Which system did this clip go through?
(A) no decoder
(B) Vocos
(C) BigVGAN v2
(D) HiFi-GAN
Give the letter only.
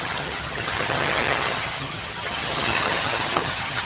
D